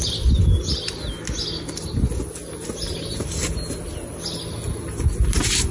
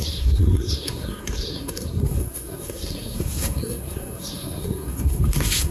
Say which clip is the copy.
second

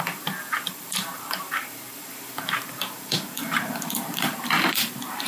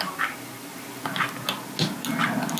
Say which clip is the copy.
first